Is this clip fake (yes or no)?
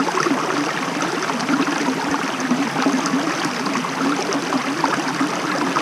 no